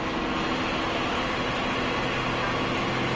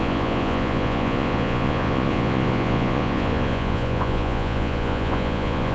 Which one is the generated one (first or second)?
second